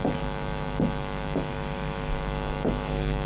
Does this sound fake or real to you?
fake